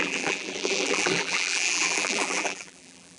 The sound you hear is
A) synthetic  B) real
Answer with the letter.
A